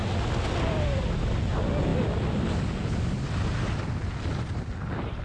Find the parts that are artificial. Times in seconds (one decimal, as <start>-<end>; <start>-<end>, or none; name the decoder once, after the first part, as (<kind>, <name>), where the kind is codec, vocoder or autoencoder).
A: none